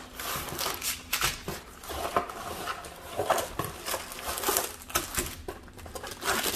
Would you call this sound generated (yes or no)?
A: no